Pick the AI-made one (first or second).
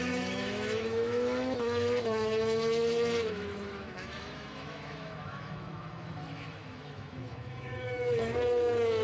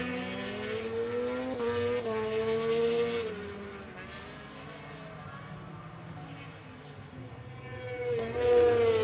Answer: first